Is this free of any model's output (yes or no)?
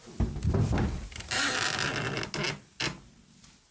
yes